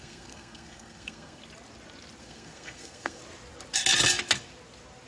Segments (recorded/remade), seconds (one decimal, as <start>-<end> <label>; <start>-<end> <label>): 0.0-1.4 remade; 1.4-2.2 recorded; 2.2-3.2 remade; 3.2-5.1 recorded